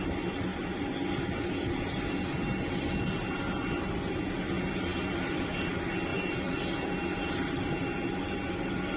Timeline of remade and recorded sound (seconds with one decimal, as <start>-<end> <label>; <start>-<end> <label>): 0.0-9.0 recorded